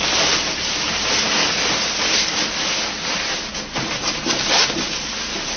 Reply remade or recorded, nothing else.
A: recorded